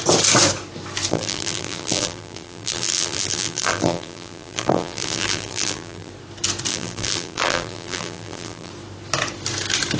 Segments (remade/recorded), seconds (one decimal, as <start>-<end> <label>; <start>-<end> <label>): 0.0-1.1 recorded; 1.1-6.1 remade; 6.1-6.7 recorded; 6.7-8.7 remade; 8.7-10.0 recorded